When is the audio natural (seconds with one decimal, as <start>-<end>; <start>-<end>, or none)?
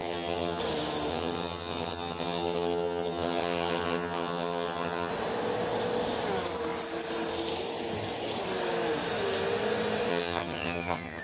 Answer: 0.6-1.1; 5.1-10.1